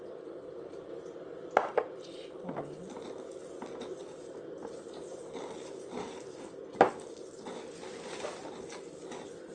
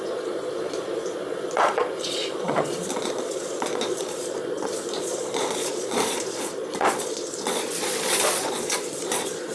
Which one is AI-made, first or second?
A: second